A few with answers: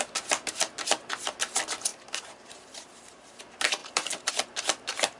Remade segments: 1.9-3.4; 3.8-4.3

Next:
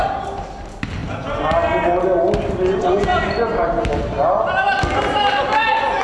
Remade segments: none

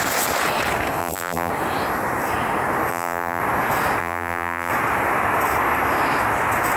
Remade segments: 1.0-1.5; 2.9-3.4; 4.0-4.7

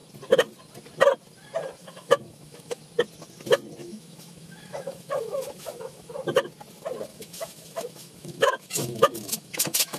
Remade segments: 1.8-2.8; 3.8-6.1; 7.1-10.0

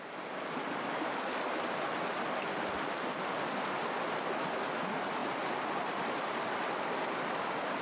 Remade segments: none

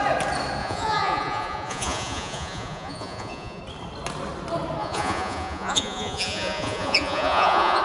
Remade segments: 0.6-3.6; 4.8-7.8